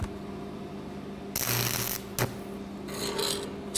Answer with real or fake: real